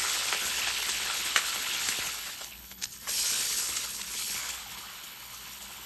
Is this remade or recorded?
remade